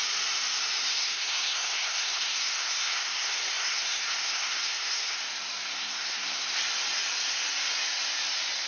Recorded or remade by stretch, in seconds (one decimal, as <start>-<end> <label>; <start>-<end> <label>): 0.0-0.9 recorded; 0.9-5.2 remade; 5.2-5.7 recorded; 5.7-6.6 remade; 6.6-8.7 recorded